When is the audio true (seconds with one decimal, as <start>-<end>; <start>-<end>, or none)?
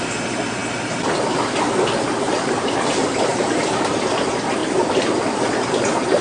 0.0-3.3; 3.9-4.6; 5.4-6.2